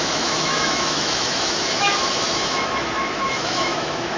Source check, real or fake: fake